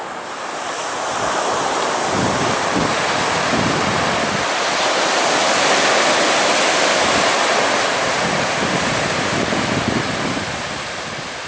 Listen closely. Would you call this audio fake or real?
real